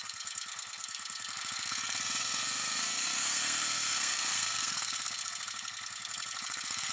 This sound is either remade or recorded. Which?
remade